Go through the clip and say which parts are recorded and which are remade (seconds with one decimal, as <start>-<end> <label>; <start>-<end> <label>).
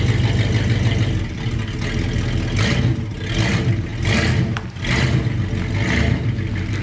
0.0-6.8 recorded